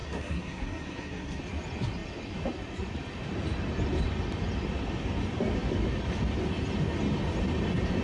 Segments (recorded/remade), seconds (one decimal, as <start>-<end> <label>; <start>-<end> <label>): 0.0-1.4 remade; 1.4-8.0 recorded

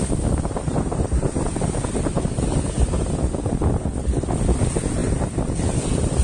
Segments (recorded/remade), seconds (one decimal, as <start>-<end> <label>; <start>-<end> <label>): 0.0-3.8 recorded; 3.8-4.4 remade; 4.4-6.2 recorded

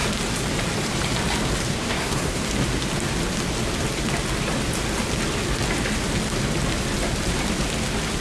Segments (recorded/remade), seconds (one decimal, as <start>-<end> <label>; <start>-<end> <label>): 0.0-1.7 recorded; 1.7-2.4 remade; 2.4-8.2 recorded

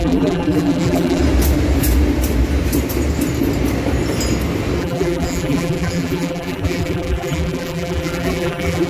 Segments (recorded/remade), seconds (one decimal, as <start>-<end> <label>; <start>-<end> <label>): 0.0-1.2 remade; 1.2-4.8 recorded; 4.8-8.9 remade